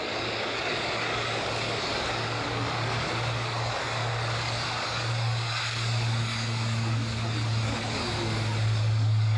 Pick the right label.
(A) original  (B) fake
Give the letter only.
B